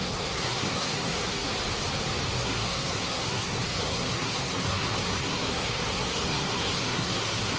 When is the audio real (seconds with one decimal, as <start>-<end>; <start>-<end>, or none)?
1.5-2.4